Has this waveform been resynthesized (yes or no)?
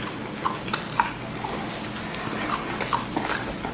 no